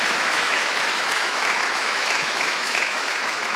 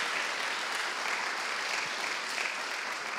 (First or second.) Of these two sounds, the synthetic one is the first